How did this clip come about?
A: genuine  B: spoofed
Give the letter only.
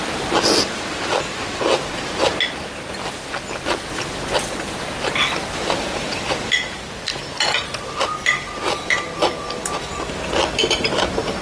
A